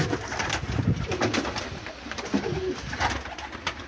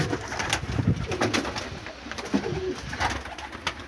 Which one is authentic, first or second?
second